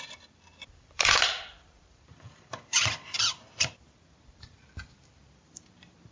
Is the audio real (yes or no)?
no